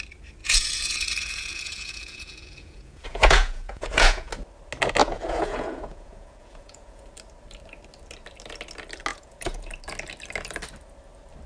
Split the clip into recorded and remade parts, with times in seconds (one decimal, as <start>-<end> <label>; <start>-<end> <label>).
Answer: 0.0-0.4 recorded; 0.4-4.3 remade; 4.3-5.0 recorded; 5.0-7.1 remade; 7.1-9.1 recorded; 9.1-9.7 remade; 9.7-11.5 recorded